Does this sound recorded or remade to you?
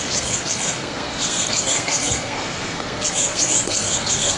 remade